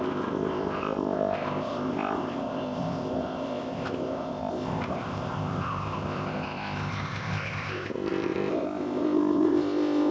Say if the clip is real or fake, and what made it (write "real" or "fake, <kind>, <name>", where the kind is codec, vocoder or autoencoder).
fake, codec, ZipCodec